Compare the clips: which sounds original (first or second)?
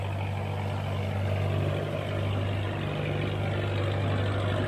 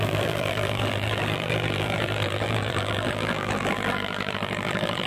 first